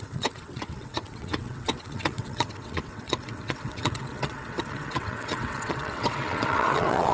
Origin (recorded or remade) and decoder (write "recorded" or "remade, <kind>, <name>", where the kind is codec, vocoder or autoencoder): remade, vocoder, WaveNeXt